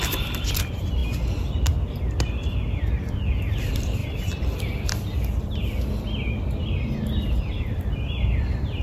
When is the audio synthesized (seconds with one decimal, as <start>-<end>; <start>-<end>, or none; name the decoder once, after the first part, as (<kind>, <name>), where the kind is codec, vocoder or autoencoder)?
none